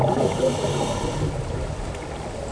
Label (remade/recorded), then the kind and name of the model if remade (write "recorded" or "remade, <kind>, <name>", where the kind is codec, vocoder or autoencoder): recorded